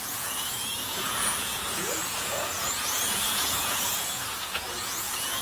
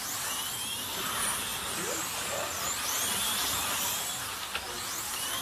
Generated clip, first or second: first